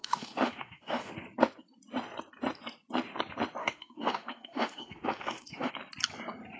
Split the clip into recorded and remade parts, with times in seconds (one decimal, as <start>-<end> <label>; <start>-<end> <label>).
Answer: 0.0-1.1 remade; 1.1-3.6 recorded; 3.6-5.7 remade; 5.7-6.6 recorded